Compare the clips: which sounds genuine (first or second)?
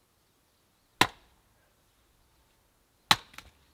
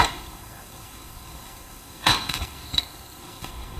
first